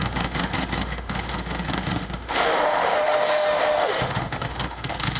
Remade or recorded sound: remade